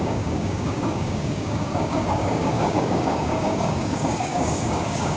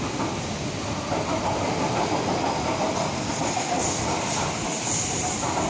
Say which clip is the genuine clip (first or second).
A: second